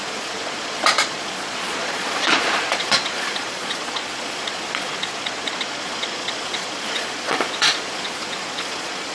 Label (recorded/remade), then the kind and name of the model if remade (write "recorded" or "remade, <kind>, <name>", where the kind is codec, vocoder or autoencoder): remade, vocoder, Vocos